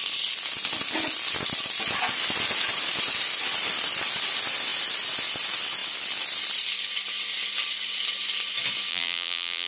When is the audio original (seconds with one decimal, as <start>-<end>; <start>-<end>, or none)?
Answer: 0.0-8.9